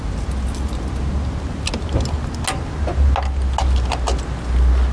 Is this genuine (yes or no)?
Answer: yes